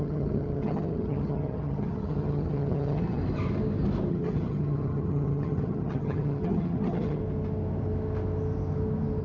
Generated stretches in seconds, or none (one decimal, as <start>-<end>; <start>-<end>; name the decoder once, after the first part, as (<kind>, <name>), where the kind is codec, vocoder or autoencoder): 0.0-3.2 (vocoder, HiFi-GAN); 4.1-7.2